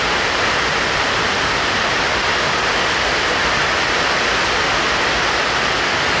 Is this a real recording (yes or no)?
yes